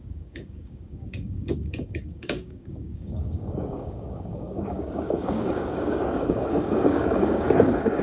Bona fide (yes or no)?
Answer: no